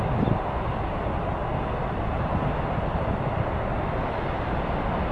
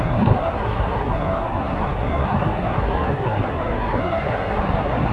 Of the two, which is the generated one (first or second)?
second